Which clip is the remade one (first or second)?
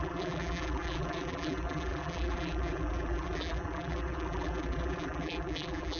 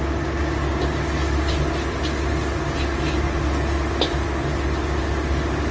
first